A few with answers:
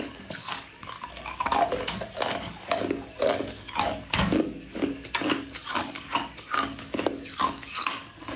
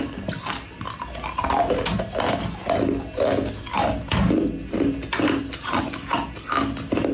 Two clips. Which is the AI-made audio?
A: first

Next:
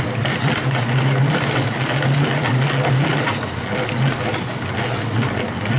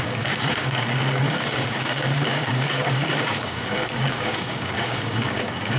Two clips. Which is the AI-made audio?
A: second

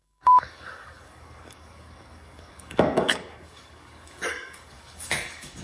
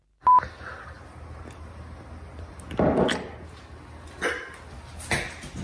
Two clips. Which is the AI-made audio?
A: first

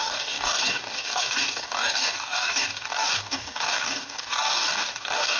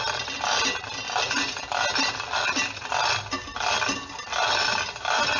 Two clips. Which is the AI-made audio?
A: first